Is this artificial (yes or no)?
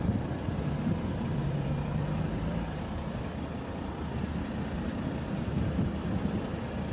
yes